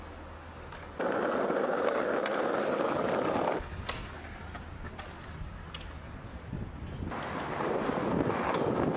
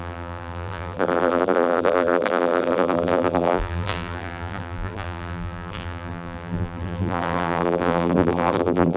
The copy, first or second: second